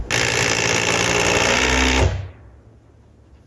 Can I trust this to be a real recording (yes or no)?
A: yes